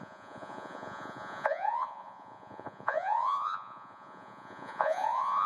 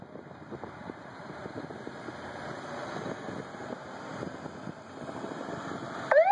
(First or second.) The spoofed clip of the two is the first